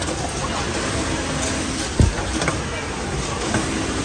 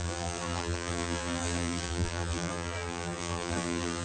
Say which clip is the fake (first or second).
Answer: second